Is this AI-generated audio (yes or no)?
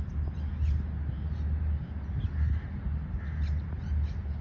no